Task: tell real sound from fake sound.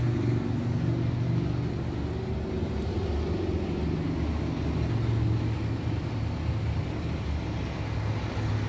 real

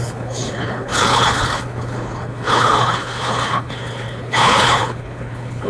fake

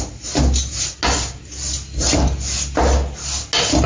real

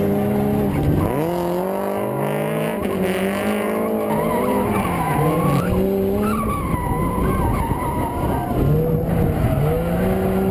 real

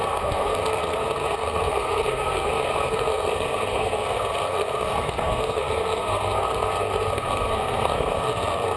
fake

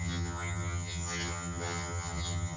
fake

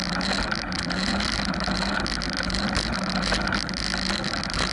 real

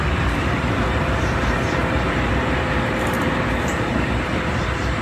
fake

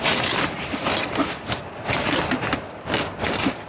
real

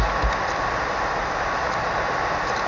real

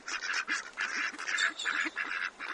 real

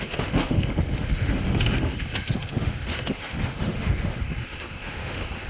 fake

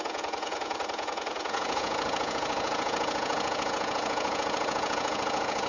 fake